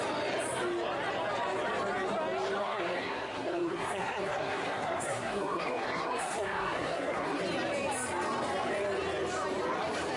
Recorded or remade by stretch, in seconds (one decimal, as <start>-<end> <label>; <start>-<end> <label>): 0.0-2.6 recorded; 2.6-7.4 remade; 7.4-10.2 recorded